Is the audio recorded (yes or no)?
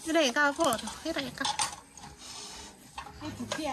yes